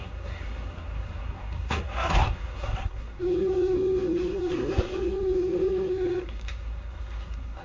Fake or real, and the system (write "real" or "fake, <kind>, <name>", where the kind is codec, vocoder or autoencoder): fake, codec, SNAC